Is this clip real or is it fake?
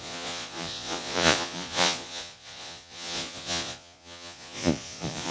fake